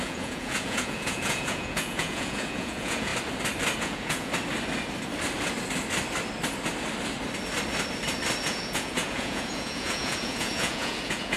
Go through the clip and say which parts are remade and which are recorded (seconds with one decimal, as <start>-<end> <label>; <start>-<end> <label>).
0.0-3.1 remade; 3.1-3.8 recorded; 3.8-4.3 remade; 4.3-8.4 recorded; 8.4-11.4 remade